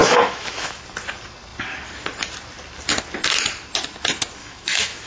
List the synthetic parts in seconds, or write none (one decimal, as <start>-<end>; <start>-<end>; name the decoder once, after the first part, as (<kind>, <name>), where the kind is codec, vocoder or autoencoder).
0.0-0.8 (autoencoder, DAC-VAE); 4.4-5.1